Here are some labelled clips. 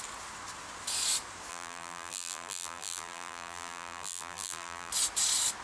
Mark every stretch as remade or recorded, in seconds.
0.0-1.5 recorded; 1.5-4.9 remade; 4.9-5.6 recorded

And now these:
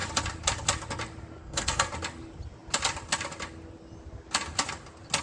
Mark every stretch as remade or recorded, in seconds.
0.0-1.4 recorded; 1.4-1.9 remade; 1.9-5.2 recorded